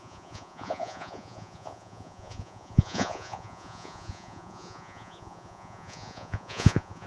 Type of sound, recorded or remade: remade